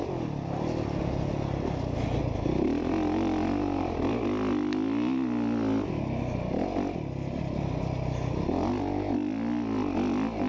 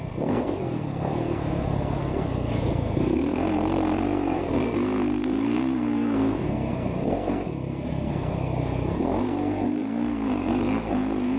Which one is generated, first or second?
second